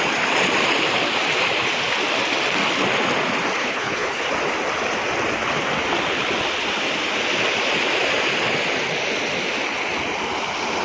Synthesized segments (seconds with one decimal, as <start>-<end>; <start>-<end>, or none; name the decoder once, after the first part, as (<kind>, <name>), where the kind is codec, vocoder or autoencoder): 3.6-4.2 (codec, HILCodec)